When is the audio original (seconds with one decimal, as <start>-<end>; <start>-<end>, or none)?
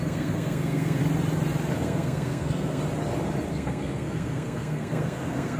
1.0-1.7; 2.8-3.5